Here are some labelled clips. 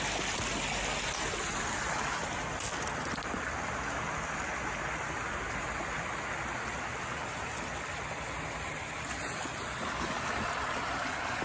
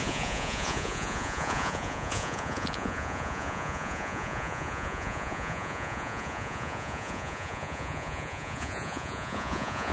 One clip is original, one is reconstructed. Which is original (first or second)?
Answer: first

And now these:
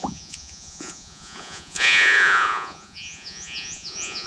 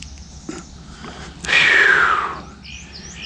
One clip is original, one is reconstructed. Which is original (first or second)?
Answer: second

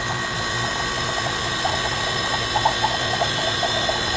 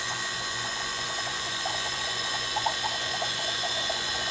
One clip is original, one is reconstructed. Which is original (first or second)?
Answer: first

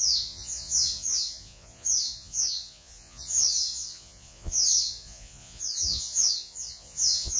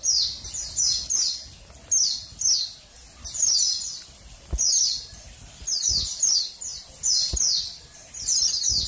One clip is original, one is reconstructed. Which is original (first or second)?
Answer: second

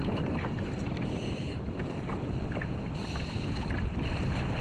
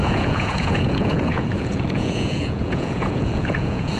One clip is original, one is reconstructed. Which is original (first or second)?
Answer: first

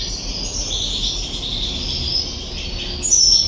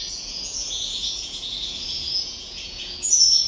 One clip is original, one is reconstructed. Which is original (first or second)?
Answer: first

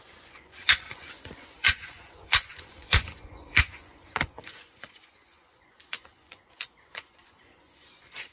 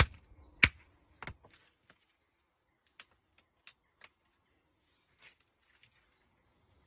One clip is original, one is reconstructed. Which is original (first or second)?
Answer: second